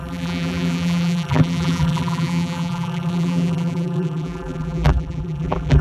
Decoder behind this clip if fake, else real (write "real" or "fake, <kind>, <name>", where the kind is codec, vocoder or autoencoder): fake, vocoder, BigVGAN v2